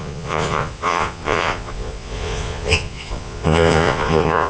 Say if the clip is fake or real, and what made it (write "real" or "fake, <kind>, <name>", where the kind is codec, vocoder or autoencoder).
fake, vocoder, Vocos